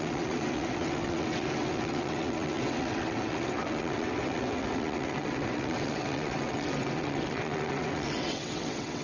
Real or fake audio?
fake